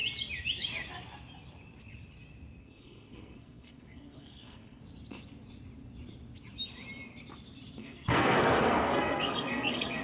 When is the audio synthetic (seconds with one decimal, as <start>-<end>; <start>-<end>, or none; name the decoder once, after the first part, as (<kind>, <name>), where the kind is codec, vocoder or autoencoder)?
2.6-4.8 (codec, SNAC); 7.8-10.0